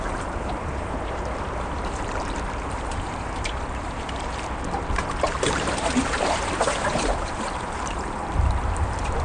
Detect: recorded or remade remade